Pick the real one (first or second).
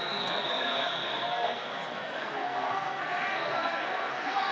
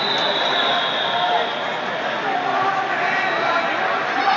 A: second